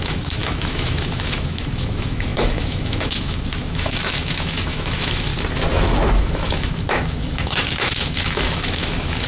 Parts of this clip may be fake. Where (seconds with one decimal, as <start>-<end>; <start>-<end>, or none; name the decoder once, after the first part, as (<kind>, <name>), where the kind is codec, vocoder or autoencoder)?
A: 0.0-5.3 (autoencoder, DAC-VAE); 6.2-9.3